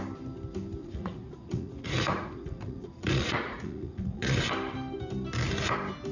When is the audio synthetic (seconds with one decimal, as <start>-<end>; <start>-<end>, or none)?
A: 0.8-4.5

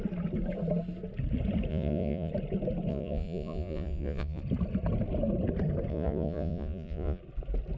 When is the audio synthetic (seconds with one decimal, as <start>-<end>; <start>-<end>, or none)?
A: 1.7-2.3; 2.9-4.4; 5.9-7.2

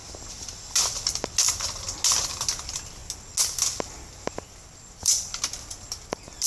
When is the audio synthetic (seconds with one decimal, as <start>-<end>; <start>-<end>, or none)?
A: none

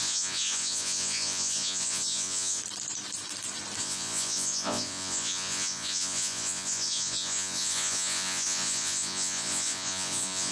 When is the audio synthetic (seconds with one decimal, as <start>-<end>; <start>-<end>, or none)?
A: 0.0-2.6; 3.8-10.5

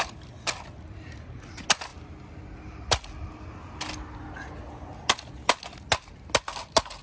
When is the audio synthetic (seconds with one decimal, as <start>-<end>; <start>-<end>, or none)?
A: none

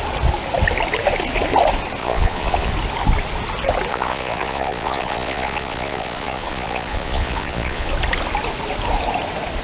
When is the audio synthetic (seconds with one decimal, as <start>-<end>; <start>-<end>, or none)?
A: 2.0-2.7; 3.9-7.9

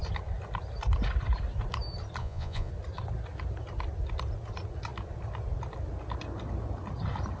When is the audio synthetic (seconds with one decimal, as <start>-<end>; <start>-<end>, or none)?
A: 2.2-2.7